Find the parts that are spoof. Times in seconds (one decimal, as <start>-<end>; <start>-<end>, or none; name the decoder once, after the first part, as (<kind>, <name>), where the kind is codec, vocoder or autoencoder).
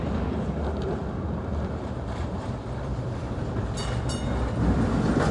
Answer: 1.0-4.2 (vocoder, BigVGAN v2)